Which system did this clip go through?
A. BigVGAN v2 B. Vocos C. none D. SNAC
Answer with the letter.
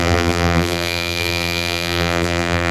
A